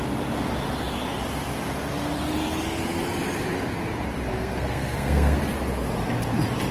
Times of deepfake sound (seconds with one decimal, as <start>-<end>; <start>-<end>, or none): 4.3-5.4